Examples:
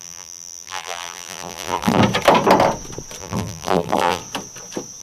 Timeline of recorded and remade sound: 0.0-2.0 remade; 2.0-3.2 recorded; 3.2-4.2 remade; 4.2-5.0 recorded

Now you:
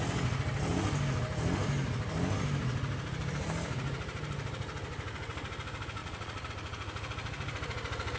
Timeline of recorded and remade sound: 0.0-6.0 recorded; 6.0-6.5 remade; 6.5-8.2 recorded

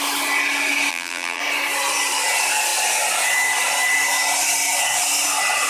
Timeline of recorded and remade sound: 0.0-0.9 recorded; 0.9-1.4 remade; 1.4-5.7 recorded

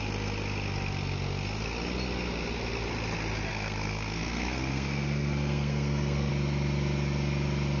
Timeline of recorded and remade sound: 0.0-3.5 recorded; 3.5-6.3 remade; 6.3-7.8 recorded

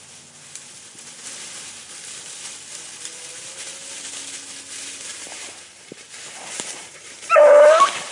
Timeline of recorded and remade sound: 0.0-5.1 recorded; 5.1-8.1 remade

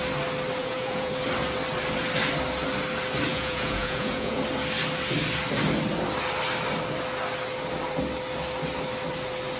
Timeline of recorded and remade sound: 0.0-0.6 recorded; 0.6-1.1 remade; 1.1-3.3 recorded; 3.3-4.4 remade; 4.4-9.6 recorded